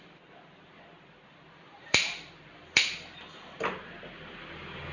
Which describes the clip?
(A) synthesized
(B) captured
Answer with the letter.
A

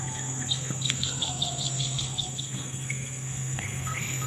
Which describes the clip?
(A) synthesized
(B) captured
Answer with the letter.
A